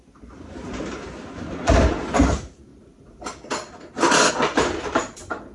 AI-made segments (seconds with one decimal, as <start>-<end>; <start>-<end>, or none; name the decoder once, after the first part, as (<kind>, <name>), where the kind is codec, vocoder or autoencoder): 0.0-2.7 (vocoder, BigVGAN v2); 4.3-5.5